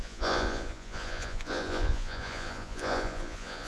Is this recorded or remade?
remade